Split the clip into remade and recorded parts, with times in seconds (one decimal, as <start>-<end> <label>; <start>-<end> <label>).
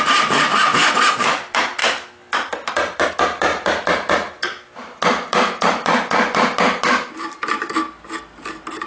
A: 0.0-8.9 recorded